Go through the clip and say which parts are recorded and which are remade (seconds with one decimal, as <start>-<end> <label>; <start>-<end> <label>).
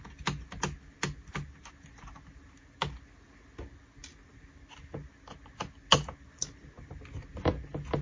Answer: 0.0-8.0 recorded